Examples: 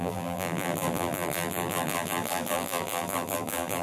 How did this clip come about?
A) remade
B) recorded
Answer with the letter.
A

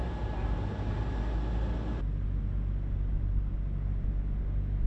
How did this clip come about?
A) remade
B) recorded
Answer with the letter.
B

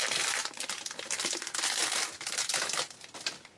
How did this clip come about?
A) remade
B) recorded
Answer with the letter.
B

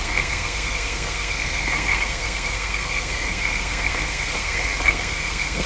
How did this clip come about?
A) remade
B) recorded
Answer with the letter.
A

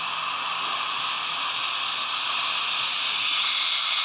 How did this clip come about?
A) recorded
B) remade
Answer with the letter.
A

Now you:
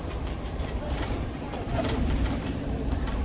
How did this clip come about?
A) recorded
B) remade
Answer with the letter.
B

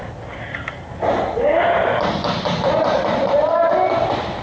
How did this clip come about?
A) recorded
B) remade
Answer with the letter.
A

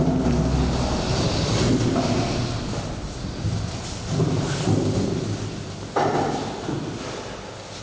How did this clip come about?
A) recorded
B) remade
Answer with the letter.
A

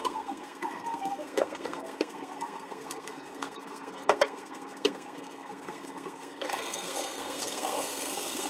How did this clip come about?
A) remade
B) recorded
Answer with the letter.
A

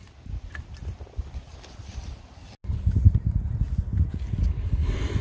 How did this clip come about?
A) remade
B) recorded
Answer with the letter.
B